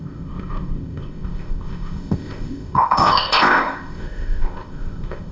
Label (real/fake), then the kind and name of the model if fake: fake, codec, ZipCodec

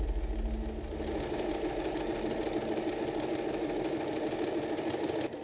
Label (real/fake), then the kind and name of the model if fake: real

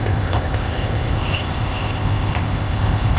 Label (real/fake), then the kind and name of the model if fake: fake, codec, ZipCodec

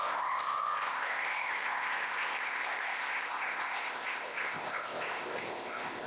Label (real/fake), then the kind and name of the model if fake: fake, codec, ZipCodec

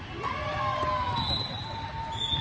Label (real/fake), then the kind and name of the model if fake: real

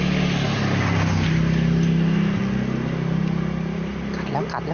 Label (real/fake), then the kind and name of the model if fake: real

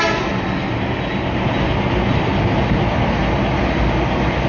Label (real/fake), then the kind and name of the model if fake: real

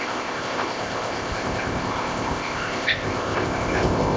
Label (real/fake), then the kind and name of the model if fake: fake, codec, ZipCodec